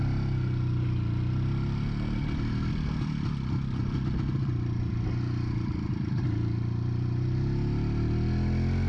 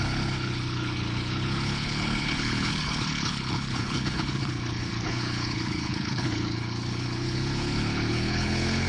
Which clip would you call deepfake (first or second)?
second